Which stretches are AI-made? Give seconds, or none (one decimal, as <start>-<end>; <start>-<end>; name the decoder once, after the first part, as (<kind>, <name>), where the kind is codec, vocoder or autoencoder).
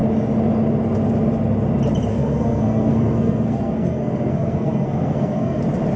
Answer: 2.1-5.6 (codec, SNAC)